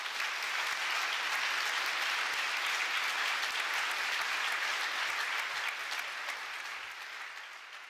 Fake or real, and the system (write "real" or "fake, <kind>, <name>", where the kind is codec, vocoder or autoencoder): real